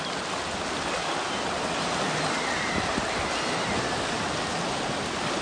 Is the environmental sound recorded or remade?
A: recorded